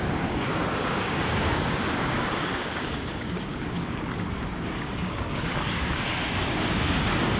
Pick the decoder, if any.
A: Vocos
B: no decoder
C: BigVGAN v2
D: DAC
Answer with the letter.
D